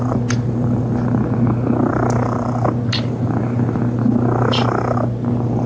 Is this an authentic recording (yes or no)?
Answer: yes